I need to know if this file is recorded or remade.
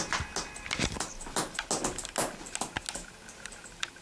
recorded